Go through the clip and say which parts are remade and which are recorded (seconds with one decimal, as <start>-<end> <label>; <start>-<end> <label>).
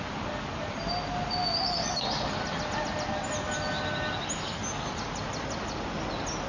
0.0-6.5 recorded